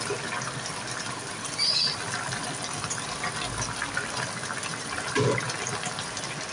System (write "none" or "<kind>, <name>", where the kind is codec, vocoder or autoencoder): none